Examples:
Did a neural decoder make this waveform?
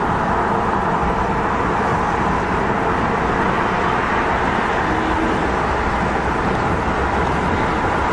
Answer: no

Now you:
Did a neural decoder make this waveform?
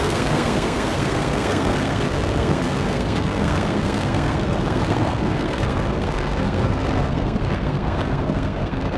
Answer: yes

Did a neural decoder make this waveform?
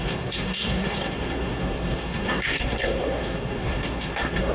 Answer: yes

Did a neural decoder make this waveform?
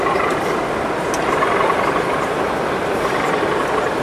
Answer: no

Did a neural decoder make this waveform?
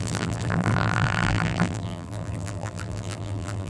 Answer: yes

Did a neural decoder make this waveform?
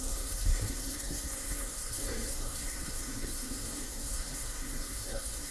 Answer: yes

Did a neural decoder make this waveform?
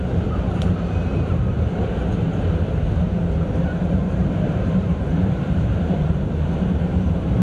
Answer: yes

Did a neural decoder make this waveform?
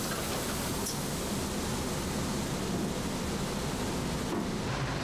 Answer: no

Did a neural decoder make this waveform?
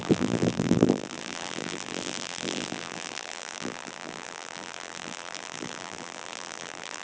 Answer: yes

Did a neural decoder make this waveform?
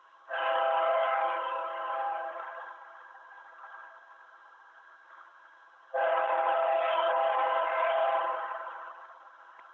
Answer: yes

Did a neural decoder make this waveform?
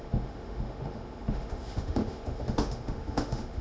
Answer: yes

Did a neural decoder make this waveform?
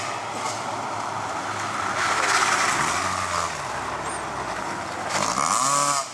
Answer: no